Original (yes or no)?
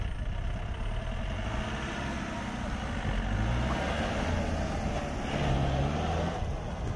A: yes